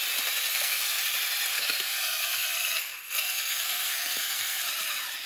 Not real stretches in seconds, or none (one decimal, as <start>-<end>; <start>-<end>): 0.5-1.0; 1.5-4.6